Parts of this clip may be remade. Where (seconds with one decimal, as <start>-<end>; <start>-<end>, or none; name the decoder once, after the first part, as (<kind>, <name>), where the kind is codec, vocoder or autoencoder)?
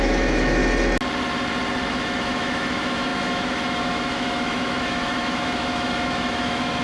0.0-0.6 (autoencoder, DAC-VAE); 1.9-6.8